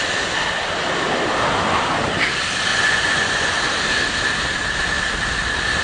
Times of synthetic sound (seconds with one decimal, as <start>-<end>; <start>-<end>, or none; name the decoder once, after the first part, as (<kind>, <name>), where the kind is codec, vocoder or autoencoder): 2.7-3.6 (vocoder, Vocos)